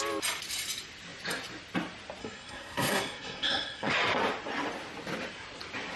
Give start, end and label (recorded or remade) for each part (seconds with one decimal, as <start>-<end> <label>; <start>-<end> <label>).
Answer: 0.0-2.2 recorded; 2.2-3.9 remade; 3.9-6.0 recorded

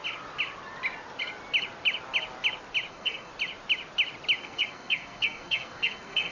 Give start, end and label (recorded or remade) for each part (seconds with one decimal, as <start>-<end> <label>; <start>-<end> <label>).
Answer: 0.0-2.9 recorded; 2.9-3.3 remade; 3.3-4.4 recorded; 4.4-6.3 remade

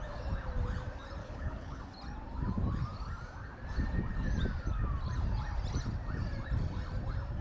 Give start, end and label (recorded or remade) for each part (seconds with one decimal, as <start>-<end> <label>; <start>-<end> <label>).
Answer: 0.0-1.2 recorded; 1.2-1.8 remade; 1.8-7.4 recorded